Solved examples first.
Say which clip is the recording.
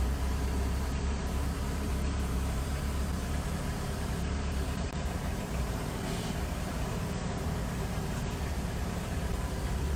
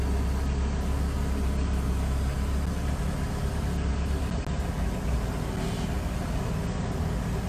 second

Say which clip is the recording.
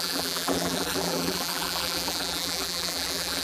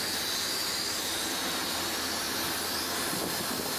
second